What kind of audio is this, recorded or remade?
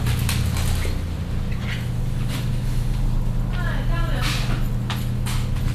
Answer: recorded